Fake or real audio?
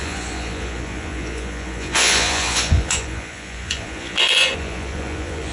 fake